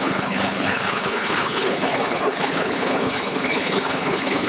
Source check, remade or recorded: remade